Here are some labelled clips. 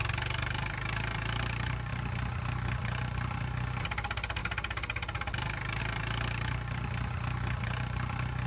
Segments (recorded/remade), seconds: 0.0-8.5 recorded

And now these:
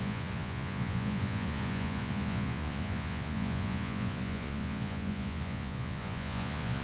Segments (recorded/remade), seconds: 0.0-6.8 remade

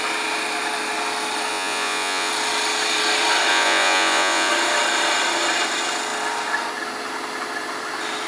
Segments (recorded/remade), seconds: 0.0-1.5 recorded; 1.5-2.3 remade; 2.3-3.5 recorded; 3.5-4.5 remade; 4.5-8.3 recorded

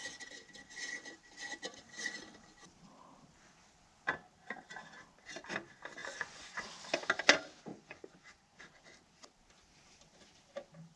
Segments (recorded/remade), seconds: 0.0-6.0 recorded; 6.0-6.7 remade; 6.7-7.7 recorded; 7.7-8.6 remade; 8.6-11.0 recorded